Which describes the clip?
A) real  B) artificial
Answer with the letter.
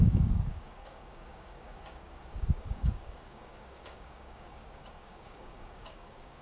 B